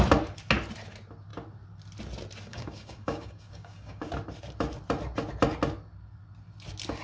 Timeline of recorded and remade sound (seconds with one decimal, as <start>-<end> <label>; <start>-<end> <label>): 0.0-2.5 recorded; 2.5-4.1 remade; 4.1-7.0 recorded

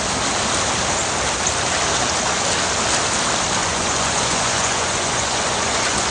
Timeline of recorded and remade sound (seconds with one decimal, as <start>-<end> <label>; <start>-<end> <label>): 0.0-3.6 recorded; 3.6-6.1 remade

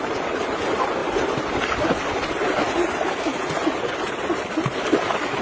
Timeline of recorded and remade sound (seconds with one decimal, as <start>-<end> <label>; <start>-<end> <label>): 0.0-5.4 recorded

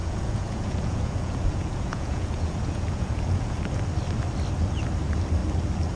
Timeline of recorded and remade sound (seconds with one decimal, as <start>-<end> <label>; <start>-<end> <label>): 0.0-3.6 remade; 3.6-6.0 recorded